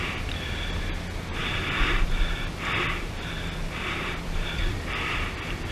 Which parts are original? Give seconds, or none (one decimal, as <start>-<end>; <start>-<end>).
1.4-1.9

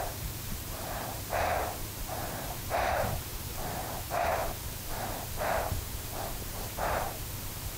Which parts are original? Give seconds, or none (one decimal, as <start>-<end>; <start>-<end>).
3.3-3.8; 4.4-5.8

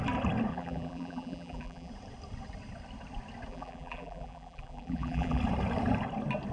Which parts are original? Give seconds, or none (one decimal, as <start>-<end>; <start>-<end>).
0.0-0.5; 1.9-3.5; 5.4-6.5

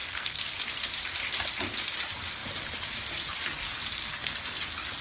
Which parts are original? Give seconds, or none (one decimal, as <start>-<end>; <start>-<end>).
0.9-4.0; 4.6-5.0

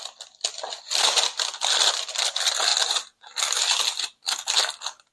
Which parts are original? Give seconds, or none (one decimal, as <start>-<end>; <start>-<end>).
0.0-5.1

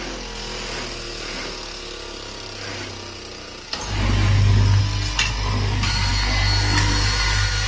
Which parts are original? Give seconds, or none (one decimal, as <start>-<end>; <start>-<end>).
0.0-7.7